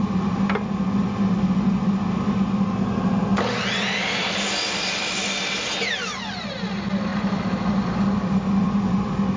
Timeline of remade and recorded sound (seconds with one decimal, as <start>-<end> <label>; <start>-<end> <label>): 0.0-3.3 recorded; 3.3-5.3 remade; 5.3-7.1 recorded; 7.1-7.6 remade; 7.6-9.4 recorded